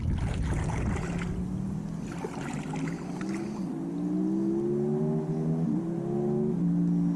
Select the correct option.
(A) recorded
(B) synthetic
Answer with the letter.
A